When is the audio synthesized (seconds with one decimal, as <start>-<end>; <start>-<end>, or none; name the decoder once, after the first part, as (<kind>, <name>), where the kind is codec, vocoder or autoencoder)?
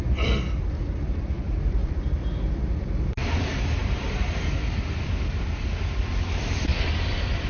0.0-3.8 (vocoder, BigVGAN v2); 5.0-7.5